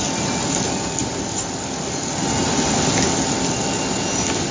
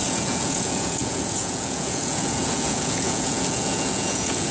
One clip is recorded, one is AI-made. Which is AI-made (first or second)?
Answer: second